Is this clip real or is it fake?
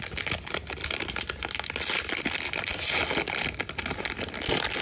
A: real